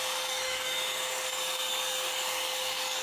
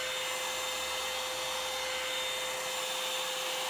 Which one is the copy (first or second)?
first